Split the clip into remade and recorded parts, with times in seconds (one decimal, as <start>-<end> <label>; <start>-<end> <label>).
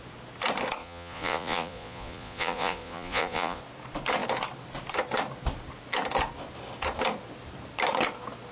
0.0-0.8 recorded; 0.8-3.6 remade; 3.6-8.5 recorded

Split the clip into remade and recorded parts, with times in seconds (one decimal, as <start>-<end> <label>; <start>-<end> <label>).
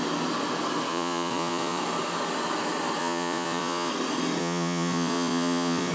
0.0-0.9 recorded; 0.9-1.8 remade; 1.8-3.0 recorded; 3.0-3.9 remade; 3.9-4.4 recorded; 4.4-5.9 remade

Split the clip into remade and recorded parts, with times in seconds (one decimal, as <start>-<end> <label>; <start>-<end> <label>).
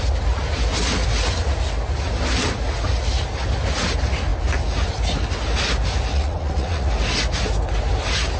0.0-6.1 recorded; 6.1-6.9 remade; 6.9-8.4 recorded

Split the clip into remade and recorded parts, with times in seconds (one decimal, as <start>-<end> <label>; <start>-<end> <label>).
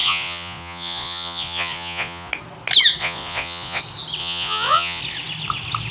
0.0-2.3 remade; 2.3-3.0 recorded; 3.0-3.8 remade; 3.8-4.2 recorded; 4.2-5.0 remade; 5.0-5.9 recorded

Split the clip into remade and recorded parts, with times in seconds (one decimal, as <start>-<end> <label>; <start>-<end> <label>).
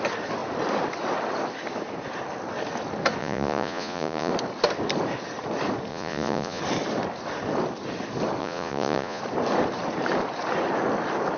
0.0-3.2 recorded; 3.2-4.3 remade; 4.3-5.9 recorded; 5.9-6.6 remade; 6.6-8.4 recorded; 8.4-9.2 remade; 9.2-11.4 recorded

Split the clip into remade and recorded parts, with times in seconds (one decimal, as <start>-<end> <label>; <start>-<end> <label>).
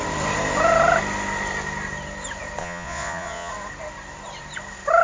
0.0-2.6 recorded; 2.6-3.5 remade; 3.5-5.0 recorded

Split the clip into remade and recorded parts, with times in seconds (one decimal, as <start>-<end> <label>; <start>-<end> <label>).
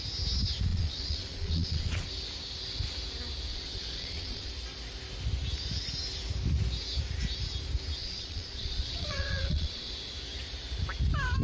0.0-0.7 recorded; 0.7-2.1 remade; 2.1-3.5 recorded; 3.5-4.5 remade; 4.5-8.0 recorded; 8.0-9.9 remade; 9.9-11.4 recorded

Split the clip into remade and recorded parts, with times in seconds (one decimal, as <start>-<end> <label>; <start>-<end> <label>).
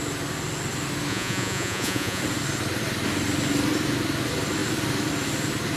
0.0-1.1 recorded; 1.1-2.2 remade; 2.2-5.8 recorded